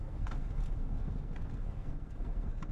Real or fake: fake